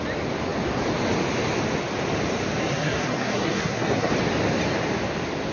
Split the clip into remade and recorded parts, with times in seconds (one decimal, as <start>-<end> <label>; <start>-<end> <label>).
0.0-2.6 recorded; 2.6-4.1 remade; 4.1-5.5 recorded

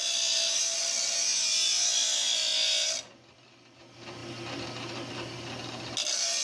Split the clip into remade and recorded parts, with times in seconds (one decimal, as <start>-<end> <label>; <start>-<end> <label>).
0.0-6.4 recorded